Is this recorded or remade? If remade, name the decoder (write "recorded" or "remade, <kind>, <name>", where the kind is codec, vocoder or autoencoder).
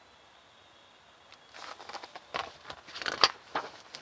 recorded